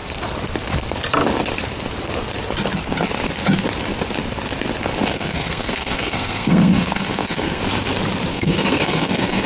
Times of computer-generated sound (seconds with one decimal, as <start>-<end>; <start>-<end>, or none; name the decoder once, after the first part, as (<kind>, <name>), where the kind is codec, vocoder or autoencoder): 5.1-7.6 (codec, SNAC); 8.3-9.5